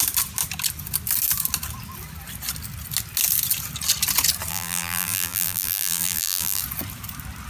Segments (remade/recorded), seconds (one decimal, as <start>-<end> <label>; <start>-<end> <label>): 0.0-4.5 recorded; 4.5-6.6 remade; 6.6-7.5 recorded